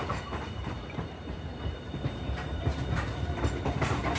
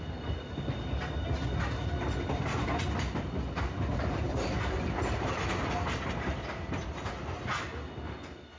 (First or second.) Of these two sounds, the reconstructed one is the first